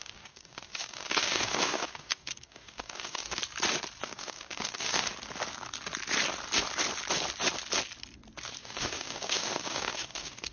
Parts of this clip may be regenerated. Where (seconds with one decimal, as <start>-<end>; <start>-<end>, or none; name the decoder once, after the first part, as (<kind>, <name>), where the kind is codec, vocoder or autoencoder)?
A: 0.0-3.4 (codec, DAC); 4.0-5.1; 8.6-10.5